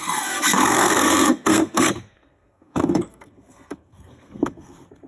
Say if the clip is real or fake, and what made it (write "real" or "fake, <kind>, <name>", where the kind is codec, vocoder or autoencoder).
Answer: fake, codec, SNAC